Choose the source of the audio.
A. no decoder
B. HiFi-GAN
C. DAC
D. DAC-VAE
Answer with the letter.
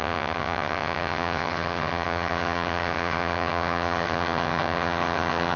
B